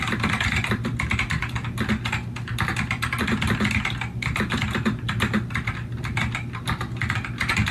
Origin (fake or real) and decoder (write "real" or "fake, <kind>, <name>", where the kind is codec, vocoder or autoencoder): real